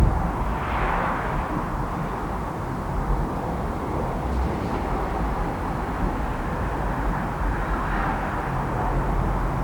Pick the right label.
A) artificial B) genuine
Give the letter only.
B